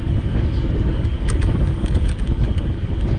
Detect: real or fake fake